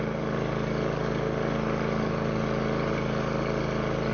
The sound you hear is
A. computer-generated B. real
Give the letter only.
B